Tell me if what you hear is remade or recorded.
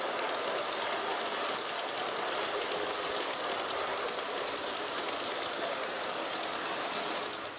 recorded